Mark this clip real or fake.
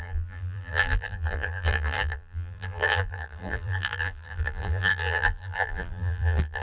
fake